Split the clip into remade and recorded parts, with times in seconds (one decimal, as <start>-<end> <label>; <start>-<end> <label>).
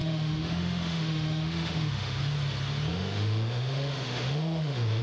0.0-2.2 remade; 2.2-2.9 recorded; 2.9-5.0 remade